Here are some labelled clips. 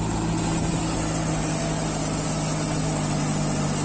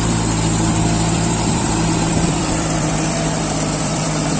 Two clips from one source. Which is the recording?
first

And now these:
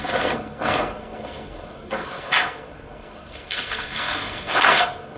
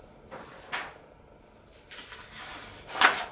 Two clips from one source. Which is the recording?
second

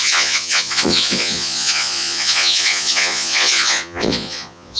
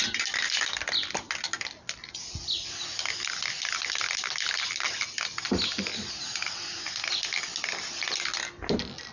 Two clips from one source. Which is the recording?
second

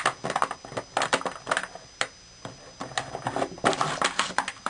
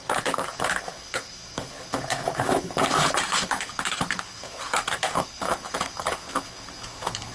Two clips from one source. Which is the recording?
first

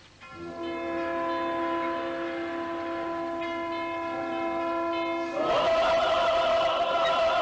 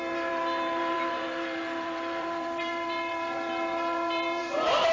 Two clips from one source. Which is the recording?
first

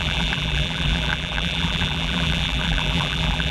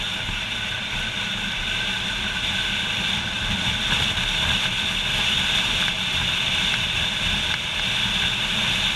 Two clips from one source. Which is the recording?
second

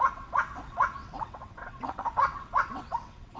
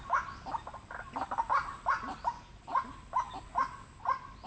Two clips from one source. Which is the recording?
second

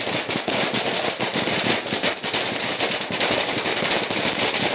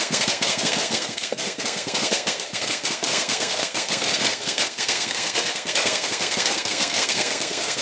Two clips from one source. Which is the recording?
first